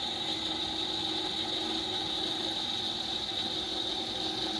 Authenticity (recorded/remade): recorded